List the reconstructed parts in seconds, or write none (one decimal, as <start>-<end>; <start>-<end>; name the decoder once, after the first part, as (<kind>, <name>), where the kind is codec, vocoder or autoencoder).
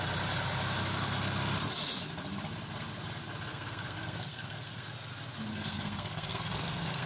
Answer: 3.5-5.1 (codec, SNAC); 5.5-7.1